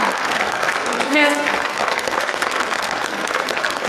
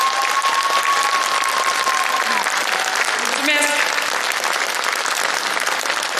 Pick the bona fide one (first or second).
second